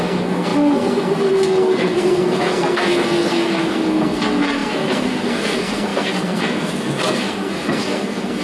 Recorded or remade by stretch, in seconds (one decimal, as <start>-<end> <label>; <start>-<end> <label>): 0.0-8.4 remade